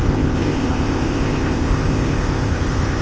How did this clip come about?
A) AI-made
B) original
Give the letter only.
A